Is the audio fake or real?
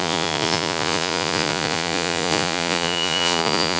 fake